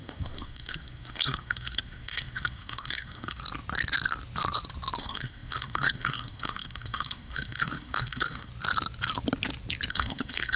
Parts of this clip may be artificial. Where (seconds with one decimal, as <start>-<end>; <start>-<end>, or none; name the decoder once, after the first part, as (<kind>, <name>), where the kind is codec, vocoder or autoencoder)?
0.0-3.4 (codec, SNAC); 5.0-8.5; 9.9-10.6

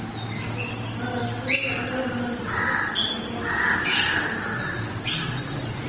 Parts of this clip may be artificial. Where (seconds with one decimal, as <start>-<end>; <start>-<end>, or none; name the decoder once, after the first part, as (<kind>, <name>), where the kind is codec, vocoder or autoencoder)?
none

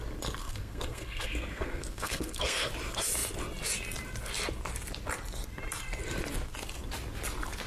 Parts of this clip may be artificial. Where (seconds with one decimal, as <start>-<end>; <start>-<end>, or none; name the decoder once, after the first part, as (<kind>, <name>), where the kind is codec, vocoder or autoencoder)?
0.4-2.7 (codec, SNAC)

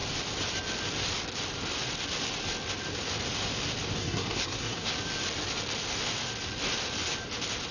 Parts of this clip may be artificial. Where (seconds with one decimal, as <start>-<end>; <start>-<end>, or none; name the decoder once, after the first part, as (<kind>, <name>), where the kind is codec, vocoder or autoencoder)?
4.0-4.9 (codec, SNAC)

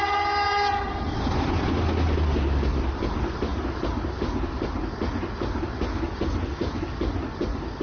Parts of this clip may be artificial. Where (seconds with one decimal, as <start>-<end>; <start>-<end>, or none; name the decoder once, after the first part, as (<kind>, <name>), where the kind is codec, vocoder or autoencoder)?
none

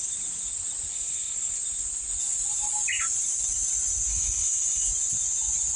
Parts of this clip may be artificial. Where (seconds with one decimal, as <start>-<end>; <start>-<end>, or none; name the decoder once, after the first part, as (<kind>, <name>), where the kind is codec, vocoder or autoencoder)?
0.9-1.6 (codec, SNAC); 4.1-4.9

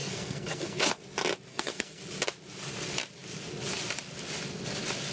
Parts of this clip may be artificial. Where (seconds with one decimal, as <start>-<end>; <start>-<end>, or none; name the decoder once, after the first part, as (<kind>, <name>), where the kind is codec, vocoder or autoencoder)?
0.0-1.0 (codec, SNAC); 1.5-2.0

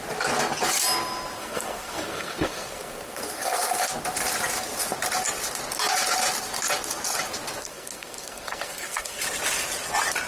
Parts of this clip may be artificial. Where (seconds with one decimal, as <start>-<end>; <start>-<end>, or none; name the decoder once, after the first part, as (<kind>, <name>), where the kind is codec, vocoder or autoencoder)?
1.4-3.9 (codec, SNAC); 7.6-9.2